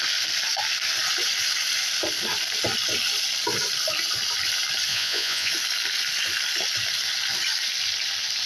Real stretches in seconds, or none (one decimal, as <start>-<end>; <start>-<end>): 0.0-4.9; 5.5-8.5